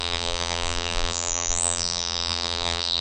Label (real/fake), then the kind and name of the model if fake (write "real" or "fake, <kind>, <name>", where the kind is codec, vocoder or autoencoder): fake, vocoder, BigVGAN v2